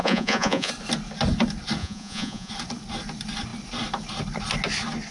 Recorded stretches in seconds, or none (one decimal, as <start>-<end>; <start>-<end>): 0.7-1.8; 2.5-5.1